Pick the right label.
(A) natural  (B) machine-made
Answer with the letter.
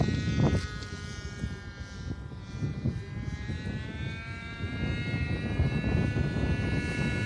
A